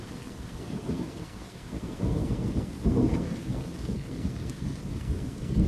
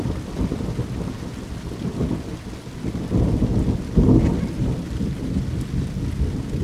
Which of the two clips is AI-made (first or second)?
first